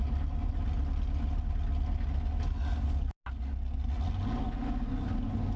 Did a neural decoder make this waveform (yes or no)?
no